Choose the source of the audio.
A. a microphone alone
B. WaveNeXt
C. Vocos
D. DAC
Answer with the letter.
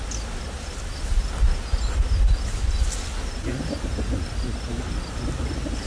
A